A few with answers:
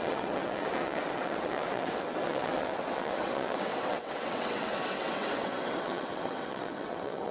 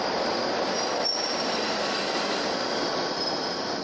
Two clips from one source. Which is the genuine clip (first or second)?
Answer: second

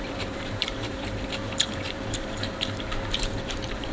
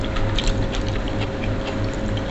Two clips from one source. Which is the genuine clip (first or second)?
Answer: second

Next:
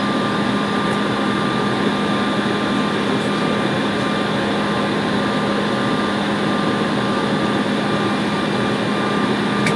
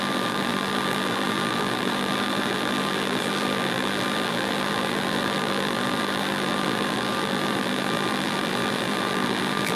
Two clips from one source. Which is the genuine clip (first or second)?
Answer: first